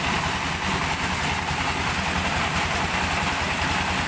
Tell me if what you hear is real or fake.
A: real